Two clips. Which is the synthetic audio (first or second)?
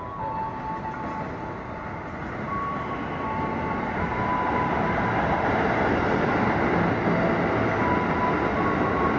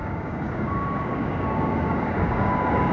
second